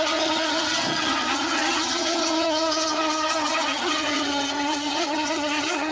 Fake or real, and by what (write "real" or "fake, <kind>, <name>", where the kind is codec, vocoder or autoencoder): fake, vocoder, HiFi-GAN